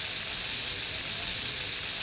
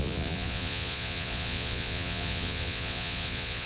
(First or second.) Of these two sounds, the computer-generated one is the second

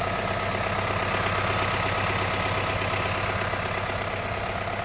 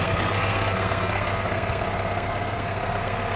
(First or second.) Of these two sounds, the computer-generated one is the second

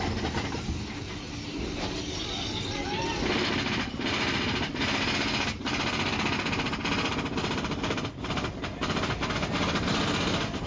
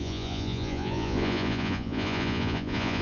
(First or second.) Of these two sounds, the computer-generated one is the second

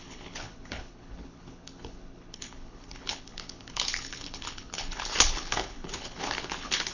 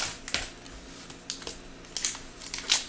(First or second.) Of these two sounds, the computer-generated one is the first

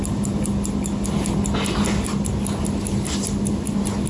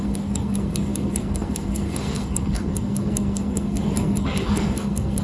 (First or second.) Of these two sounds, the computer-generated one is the second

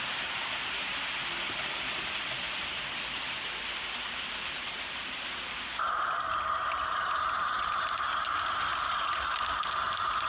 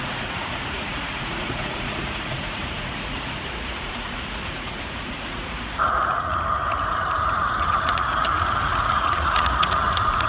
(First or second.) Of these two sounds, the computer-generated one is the second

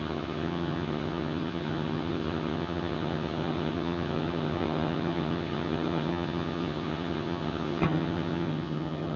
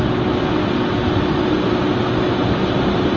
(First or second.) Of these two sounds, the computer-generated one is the first